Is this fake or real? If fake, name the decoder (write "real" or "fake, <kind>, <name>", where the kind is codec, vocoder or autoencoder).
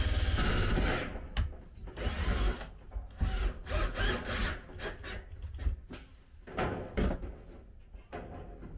real